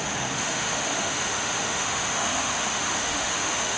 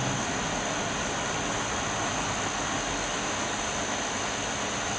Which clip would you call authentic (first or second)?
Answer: second